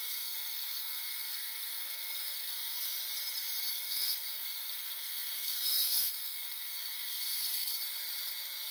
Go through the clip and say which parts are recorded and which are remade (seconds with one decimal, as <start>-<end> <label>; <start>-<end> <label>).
0.0-3.0 remade; 3.0-3.7 recorded; 3.7-7.7 remade; 7.7-8.7 recorded